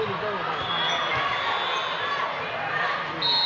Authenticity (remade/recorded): recorded